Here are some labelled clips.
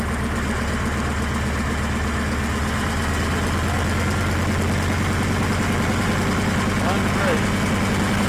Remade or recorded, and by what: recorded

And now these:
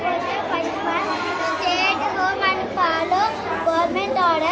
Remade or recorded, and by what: recorded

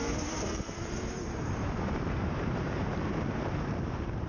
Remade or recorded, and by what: remade, vocoder, BigVGAN v2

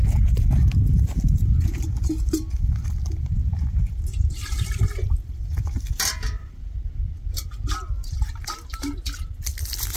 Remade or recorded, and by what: remade, vocoder, BigVGAN v2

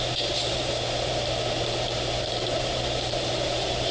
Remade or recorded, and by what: remade, vocoder, BigVGAN v2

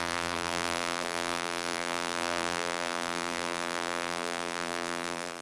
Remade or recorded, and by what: remade, vocoder, BigVGAN v2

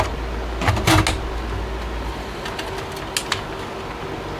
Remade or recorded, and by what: recorded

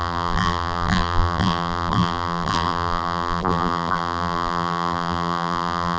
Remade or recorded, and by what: remade, vocoder, BigVGAN v2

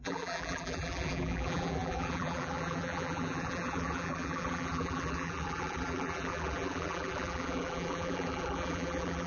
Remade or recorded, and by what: remade, vocoder, BigVGAN v2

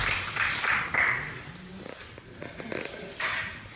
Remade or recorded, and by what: recorded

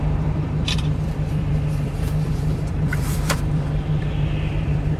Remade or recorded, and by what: remade, vocoder, BigVGAN v2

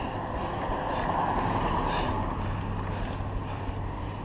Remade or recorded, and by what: recorded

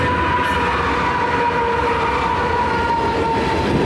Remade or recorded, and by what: recorded